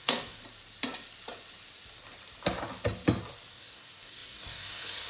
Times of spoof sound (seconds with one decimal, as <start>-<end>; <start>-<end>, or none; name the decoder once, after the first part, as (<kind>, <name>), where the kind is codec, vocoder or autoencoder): 0.0-0.4 (codec, DAC); 3.5-5.1